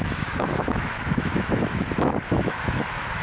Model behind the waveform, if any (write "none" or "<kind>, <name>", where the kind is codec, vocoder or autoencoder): autoencoder, DAC-VAE